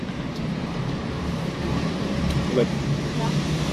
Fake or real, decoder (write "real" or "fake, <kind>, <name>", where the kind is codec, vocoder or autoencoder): fake, vocoder, BigVGAN v2